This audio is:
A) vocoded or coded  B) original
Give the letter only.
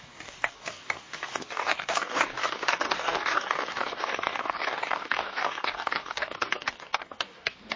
A